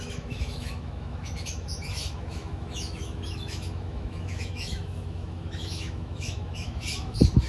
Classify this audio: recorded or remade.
remade